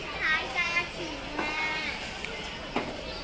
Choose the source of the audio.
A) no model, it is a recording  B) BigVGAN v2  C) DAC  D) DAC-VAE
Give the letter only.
A